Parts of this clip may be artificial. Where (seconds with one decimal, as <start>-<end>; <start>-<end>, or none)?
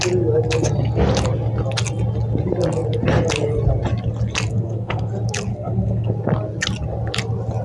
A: 4.5-5.1; 5.5-6.1